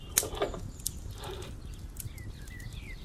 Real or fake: real